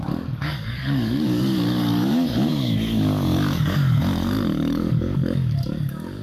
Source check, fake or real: fake